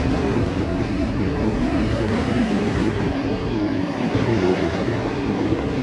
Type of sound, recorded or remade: remade